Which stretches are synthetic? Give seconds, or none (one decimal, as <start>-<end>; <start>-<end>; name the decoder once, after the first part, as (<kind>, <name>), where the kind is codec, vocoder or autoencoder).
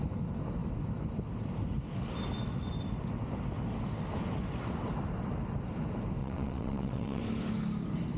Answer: 6.2-7.2 (vocoder, WaveNeXt)